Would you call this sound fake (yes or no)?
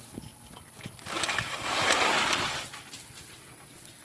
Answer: no